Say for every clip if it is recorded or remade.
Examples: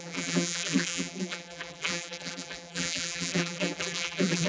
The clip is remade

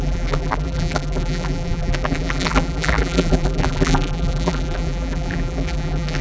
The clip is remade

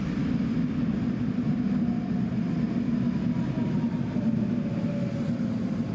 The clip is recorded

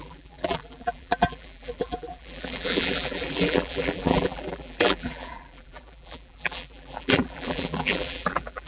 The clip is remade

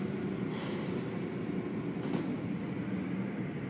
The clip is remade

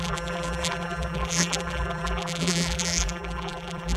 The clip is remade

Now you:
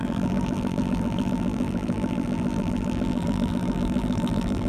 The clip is remade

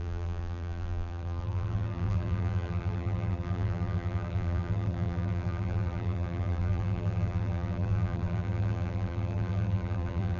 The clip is remade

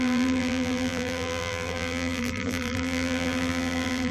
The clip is remade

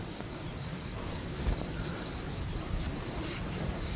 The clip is remade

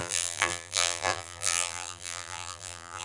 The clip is remade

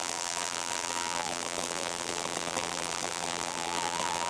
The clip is remade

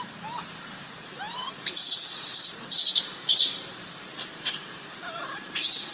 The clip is remade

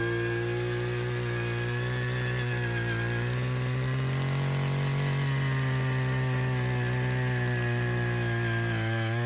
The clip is recorded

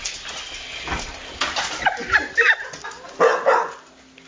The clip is recorded